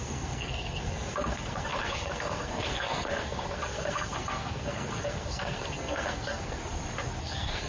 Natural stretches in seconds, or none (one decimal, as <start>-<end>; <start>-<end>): 6.6-7.2